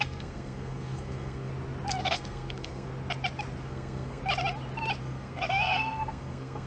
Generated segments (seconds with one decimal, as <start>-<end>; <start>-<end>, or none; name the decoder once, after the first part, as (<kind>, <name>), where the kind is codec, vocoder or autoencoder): 0.0-1.5 (codec, SNAC); 2.0-2.9; 3.6-4.2; 5.0-6.7